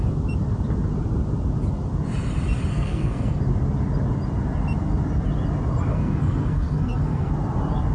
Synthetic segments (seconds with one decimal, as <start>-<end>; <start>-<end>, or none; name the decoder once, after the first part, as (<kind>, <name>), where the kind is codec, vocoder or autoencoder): 2.7-3.4 (codec, SNAC); 5.9-7.3